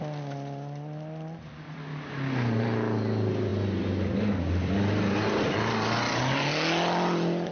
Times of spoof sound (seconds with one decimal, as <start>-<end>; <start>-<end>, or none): none